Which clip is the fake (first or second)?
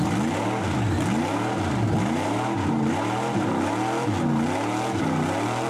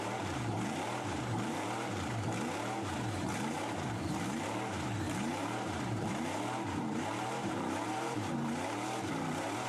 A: second